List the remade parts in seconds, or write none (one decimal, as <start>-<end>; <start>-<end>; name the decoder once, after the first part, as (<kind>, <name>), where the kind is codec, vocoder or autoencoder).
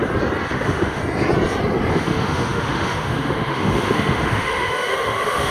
0.5-1.0 (autoencoder, DAC-VAE); 1.9-5.5